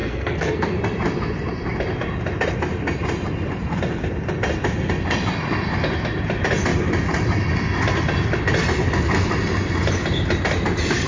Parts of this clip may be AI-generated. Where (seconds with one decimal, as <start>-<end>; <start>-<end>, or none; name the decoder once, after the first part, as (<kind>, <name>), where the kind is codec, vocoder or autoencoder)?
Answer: 0.0-0.8 (codec, SNAC)